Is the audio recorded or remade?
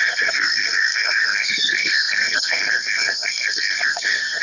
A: remade